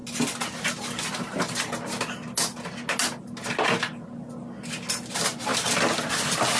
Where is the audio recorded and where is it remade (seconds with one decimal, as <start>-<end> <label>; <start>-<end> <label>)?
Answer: 0.0-6.6 recorded